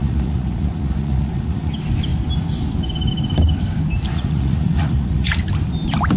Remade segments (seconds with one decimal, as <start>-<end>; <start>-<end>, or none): 0.0-1.7; 4.1-5.4